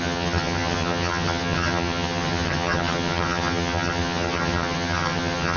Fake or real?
fake